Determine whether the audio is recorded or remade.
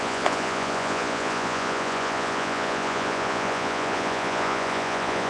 remade